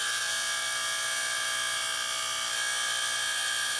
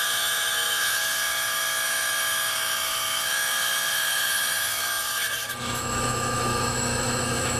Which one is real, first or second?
first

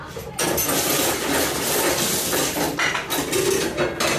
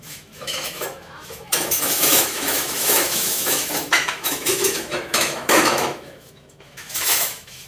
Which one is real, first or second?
first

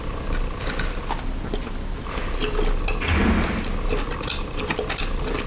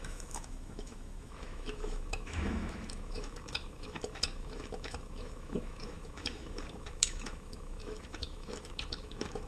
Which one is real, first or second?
first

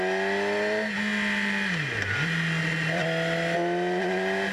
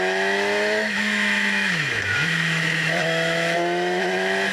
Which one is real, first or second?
first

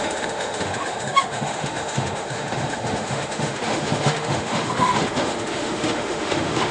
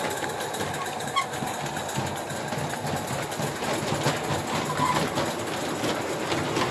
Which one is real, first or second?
second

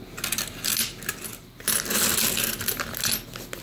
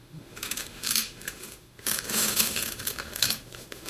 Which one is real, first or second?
first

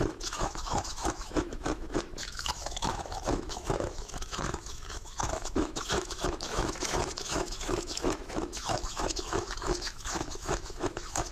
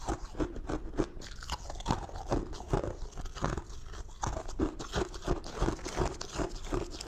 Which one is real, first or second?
second